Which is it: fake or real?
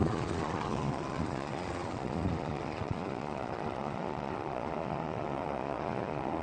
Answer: fake